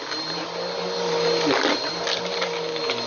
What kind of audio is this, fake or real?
real